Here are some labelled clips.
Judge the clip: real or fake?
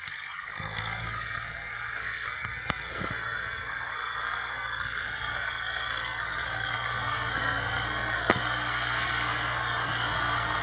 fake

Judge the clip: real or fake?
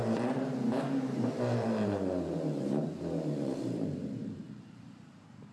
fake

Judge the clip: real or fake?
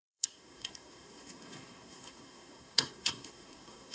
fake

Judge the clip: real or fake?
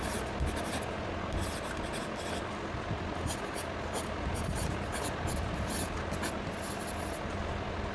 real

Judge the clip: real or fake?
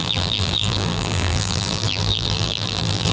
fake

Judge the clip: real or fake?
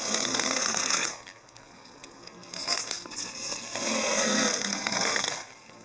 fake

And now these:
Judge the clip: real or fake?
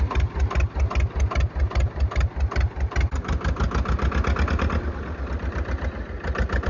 real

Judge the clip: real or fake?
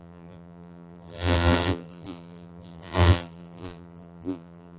fake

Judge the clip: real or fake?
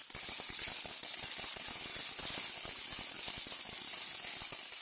real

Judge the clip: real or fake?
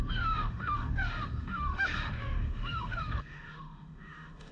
fake